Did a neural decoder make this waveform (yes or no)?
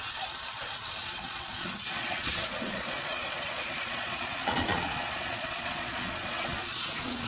yes